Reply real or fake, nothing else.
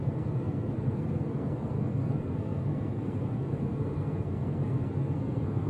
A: fake